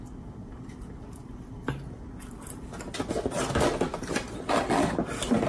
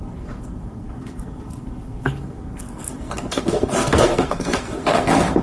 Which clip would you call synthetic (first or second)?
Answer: second